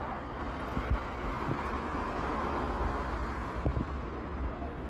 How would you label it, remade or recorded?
recorded